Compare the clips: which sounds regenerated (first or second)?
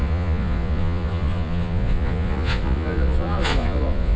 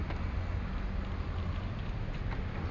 first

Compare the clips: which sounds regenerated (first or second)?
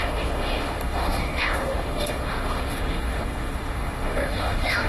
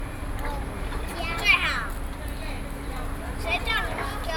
first